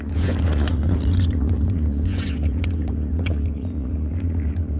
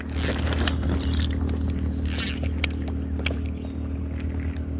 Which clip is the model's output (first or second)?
first